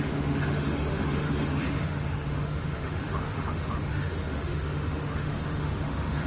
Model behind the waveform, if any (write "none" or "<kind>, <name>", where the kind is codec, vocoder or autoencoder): autoencoder, DAC-VAE